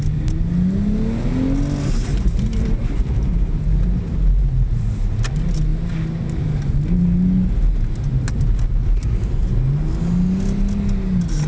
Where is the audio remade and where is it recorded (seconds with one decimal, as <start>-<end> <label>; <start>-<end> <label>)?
0.0-2.1 recorded; 2.1-5.2 remade; 5.2-11.5 recorded